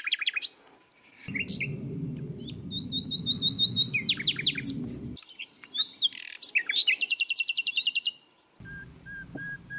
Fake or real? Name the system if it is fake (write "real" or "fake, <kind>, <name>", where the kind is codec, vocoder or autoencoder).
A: real